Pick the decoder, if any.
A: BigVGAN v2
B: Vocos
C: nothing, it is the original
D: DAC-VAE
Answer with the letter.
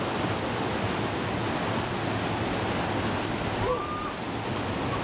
C